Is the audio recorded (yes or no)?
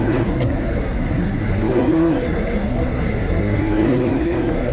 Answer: no